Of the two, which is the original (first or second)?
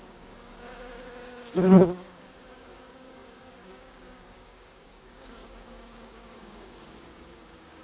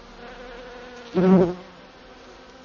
second